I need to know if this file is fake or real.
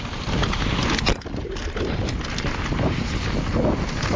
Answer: real